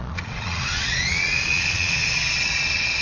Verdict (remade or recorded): remade